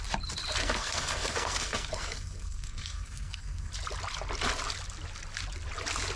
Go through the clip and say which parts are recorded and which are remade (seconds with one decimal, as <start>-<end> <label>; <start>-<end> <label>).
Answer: 0.0-0.6 recorded; 0.6-3.7 remade; 3.7-6.2 recorded